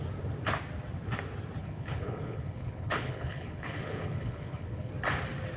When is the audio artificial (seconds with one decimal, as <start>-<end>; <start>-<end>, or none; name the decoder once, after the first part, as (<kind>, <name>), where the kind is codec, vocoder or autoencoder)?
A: 1.6-4.9 (codec, HILCodec)